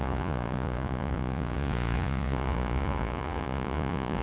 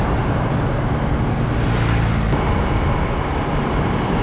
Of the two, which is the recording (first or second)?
second